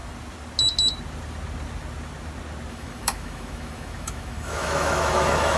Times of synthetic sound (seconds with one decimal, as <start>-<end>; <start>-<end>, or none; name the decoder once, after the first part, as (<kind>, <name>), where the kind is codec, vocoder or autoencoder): 2.7-5.6 (autoencoder, DAC-VAE)